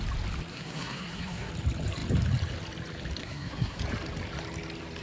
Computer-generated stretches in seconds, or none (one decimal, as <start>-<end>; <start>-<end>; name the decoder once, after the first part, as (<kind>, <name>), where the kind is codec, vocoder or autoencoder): 0.5-1.5 (codec, SNAC); 3.2-3.8